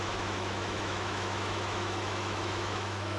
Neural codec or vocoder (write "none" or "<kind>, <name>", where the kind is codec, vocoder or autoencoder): autoencoder, DAC-VAE